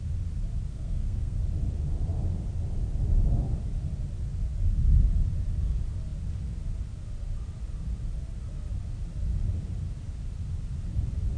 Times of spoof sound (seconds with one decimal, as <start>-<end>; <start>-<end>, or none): 0.7-1.4